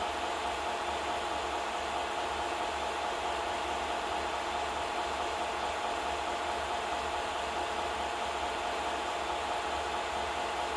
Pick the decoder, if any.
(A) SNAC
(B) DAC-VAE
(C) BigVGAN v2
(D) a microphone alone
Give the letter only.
D